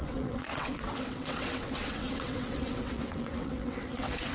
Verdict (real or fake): fake